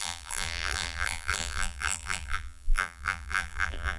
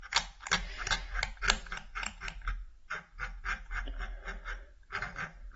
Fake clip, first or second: first